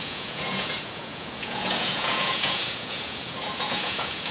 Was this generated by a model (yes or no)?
yes